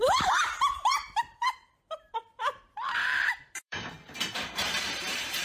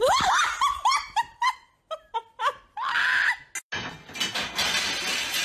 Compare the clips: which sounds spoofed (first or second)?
first